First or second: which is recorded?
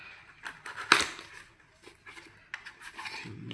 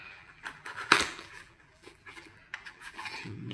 first